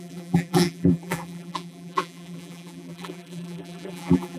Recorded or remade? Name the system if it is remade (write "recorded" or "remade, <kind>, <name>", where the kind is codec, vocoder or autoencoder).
remade, vocoder, BigVGAN v2